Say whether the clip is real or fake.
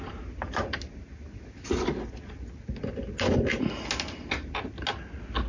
real